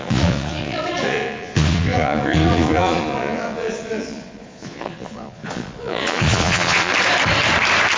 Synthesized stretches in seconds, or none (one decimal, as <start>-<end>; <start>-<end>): 0.0-6.9